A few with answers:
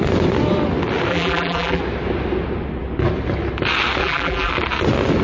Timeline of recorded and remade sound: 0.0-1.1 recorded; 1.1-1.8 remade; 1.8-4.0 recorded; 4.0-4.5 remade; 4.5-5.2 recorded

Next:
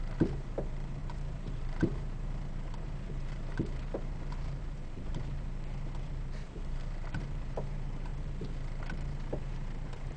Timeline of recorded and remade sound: 0.0-8.1 remade; 8.1-9.4 recorded; 9.4-10.2 remade